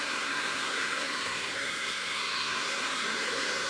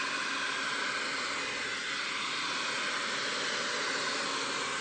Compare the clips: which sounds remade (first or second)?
first